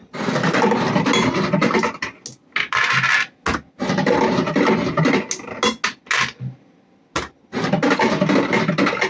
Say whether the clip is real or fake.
real